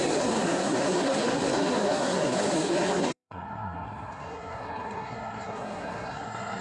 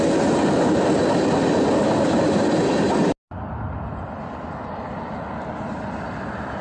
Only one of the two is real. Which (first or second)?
second